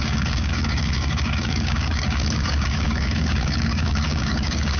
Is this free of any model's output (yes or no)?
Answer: no